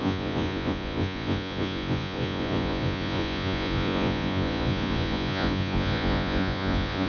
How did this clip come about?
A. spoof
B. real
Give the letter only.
A